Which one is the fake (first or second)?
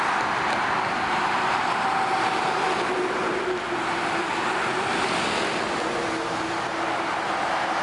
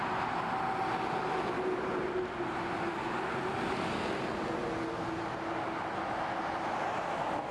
first